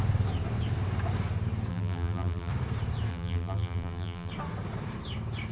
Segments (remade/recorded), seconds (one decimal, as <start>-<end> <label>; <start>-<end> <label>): 0.0-1.7 recorded; 1.7-2.5 remade; 2.5-3.1 recorded; 3.1-4.3 remade; 4.3-5.5 recorded